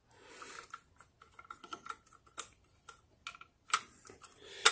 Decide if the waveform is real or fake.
real